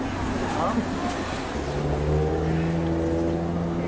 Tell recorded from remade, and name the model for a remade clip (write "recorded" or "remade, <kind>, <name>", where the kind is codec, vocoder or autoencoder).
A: recorded